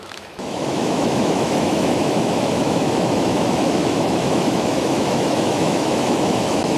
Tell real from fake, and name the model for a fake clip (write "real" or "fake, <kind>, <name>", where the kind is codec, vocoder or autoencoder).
fake, autoencoder, DAC-VAE